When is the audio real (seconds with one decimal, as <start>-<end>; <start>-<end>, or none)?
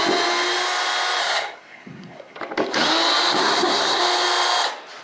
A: 0.0-1.2; 2.4-3.4; 4.0-5.0